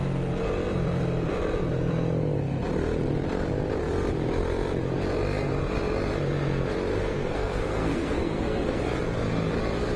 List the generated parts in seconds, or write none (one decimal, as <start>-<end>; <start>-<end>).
6.9-8.8